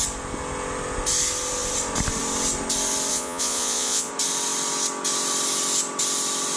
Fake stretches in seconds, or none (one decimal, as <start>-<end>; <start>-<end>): 3.1-4.1